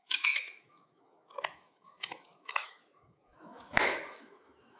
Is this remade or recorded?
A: remade